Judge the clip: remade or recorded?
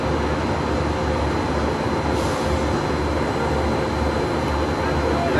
recorded